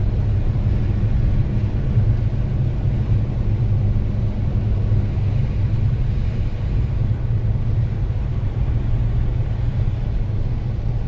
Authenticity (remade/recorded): recorded